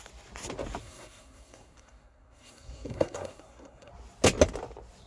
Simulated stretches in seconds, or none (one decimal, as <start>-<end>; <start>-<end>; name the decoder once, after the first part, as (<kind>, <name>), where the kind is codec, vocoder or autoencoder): 0.8-3.9 (codec, SNAC)